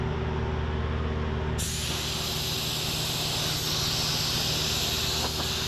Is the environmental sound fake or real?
real